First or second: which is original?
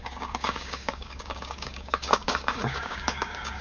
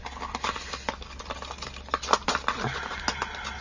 second